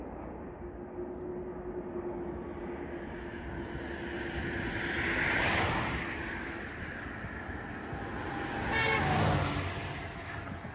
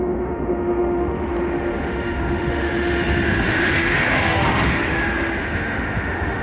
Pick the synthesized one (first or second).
second